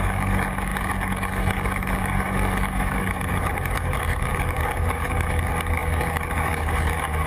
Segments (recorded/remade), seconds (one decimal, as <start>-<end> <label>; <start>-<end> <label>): 0.0-7.3 remade